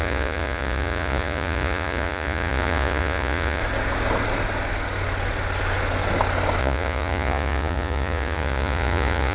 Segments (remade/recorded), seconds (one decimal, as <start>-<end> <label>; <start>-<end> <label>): 0.0-3.6 remade; 3.6-6.6 recorded; 6.6-9.3 remade